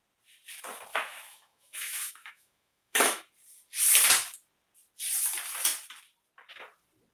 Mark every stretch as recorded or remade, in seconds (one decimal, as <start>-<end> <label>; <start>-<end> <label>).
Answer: 0.0-0.9 recorded; 0.9-3.3 remade; 3.3-7.1 recorded